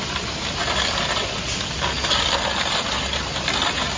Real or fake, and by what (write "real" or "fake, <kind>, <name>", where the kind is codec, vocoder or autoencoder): real